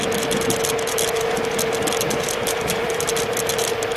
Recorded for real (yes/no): yes